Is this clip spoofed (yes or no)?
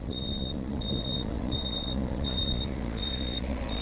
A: yes